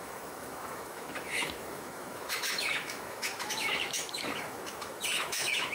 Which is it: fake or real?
fake